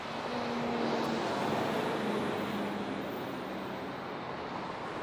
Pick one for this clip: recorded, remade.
recorded